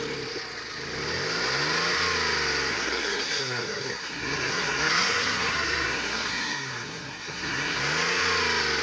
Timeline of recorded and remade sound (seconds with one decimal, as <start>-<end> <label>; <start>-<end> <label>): 0.0-2.7 recorded; 2.7-7.8 remade; 7.8-8.8 recorded